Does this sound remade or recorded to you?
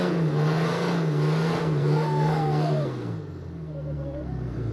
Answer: remade